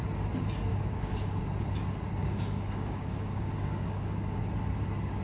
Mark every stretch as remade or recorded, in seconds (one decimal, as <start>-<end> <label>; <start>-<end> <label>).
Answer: 0.0-0.7 recorded; 0.7-1.4 remade; 1.4-2.2 recorded; 2.2-4.4 remade; 4.4-5.2 recorded